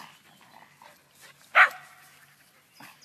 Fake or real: real